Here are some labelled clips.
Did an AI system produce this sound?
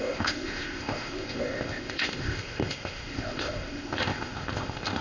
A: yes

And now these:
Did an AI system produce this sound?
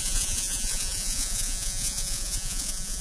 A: yes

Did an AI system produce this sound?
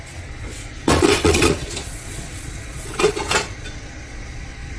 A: yes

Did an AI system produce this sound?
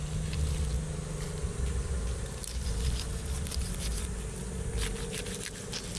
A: no